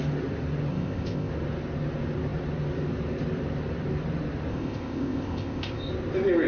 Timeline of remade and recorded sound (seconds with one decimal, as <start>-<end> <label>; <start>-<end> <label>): 0.0-0.7 recorded; 0.7-1.3 remade; 1.3-4.5 recorded; 4.5-5.9 remade; 5.9-6.5 recorded